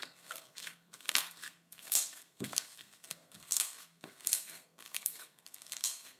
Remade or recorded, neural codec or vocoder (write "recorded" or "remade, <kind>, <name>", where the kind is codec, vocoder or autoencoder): remade, codec, SNAC